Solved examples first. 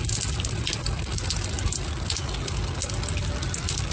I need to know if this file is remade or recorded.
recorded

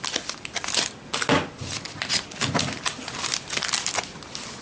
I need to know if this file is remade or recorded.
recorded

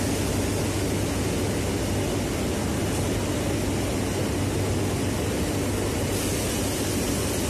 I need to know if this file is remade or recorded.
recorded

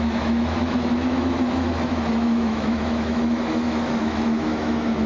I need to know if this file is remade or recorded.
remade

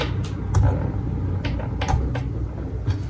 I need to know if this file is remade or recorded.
recorded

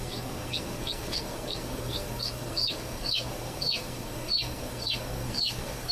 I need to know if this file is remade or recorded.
remade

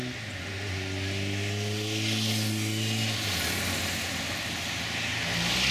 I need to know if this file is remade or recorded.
recorded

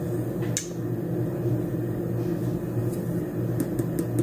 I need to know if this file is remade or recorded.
recorded